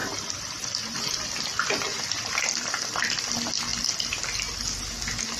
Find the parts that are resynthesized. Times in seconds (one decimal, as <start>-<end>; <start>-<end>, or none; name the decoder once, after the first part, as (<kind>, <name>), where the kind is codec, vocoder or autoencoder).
0.0-3.2 (vocoder, BigVGAN v2)